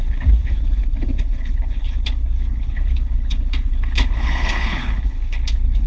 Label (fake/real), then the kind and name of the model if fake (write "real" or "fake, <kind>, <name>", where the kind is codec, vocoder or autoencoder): fake, codec, HILCodec